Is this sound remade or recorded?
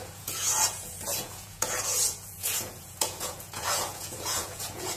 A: remade